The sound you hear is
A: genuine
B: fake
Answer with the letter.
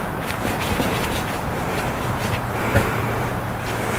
B